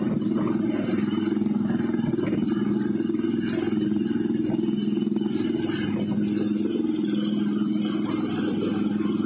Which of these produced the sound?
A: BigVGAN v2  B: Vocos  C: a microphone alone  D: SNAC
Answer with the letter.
C